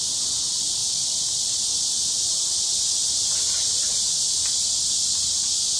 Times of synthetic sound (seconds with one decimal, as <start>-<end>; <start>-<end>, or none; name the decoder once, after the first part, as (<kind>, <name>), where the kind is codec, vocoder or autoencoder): none